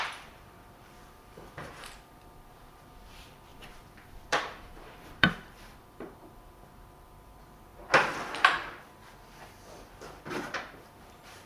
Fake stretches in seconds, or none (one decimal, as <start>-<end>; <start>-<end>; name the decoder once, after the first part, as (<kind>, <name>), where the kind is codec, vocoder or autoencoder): 0.0-7.7 (vocoder, BigVGAN v2); 10.3-11.5